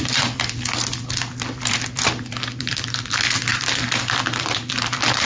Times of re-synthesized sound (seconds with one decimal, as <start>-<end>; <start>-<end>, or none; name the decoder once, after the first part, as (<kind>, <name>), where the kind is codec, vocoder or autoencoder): 0.0-5.2 (vocoder, BigVGAN v2)